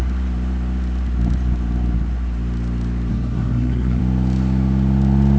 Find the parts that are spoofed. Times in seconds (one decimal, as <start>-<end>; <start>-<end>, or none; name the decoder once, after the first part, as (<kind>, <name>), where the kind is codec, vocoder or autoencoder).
3.1-4.0 (codec, SNAC)